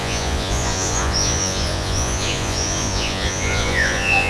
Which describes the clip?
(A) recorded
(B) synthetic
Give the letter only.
B